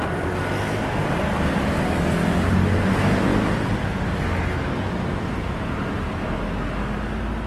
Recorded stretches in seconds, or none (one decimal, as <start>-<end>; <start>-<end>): 0.0-7.5